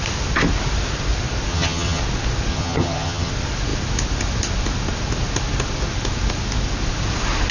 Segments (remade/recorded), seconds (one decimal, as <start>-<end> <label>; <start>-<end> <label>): 0.0-1.5 recorded; 1.5-2.0 remade; 2.0-2.5 recorded; 2.5-3.3 remade; 3.3-7.5 recorded